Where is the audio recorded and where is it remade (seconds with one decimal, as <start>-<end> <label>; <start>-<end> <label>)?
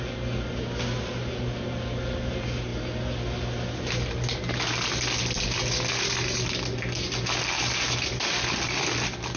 0.0-9.4 recorded